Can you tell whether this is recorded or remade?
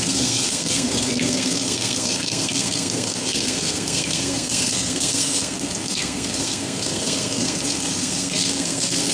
remade